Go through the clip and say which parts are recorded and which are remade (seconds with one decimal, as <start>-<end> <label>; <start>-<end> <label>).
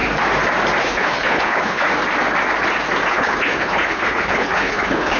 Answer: 0.0-0.8 recorded; 0.8-1.9 remade; 1.9-3.1 recorded; 3.1-5.2 remade